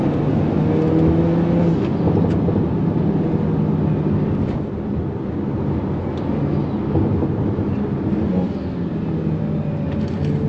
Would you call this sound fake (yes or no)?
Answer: no